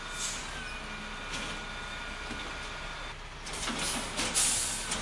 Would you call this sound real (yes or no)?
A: yes